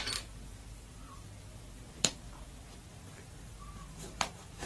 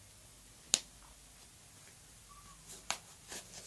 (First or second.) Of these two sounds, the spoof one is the first